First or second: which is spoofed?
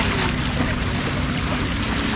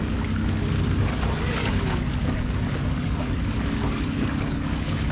second